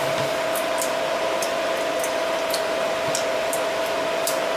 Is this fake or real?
fake